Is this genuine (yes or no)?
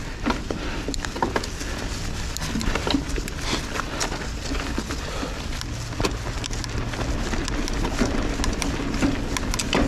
yes